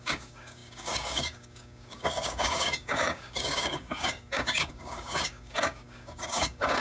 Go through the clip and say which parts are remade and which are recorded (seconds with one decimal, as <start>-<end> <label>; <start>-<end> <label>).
0.0-6.8 remade